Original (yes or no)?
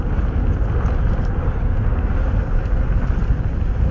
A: yes